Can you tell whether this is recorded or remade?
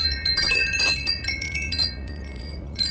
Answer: remade